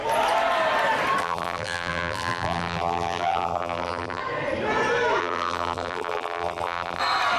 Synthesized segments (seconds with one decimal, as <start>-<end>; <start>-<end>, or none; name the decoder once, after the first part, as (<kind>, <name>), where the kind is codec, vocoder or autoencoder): 1.2-4.2 (vocoder, BigVGAN v2); 5.2-7.0